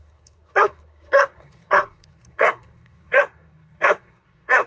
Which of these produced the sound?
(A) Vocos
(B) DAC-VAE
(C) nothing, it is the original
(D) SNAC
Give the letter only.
D